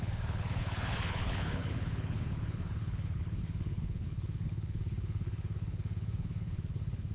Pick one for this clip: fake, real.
fake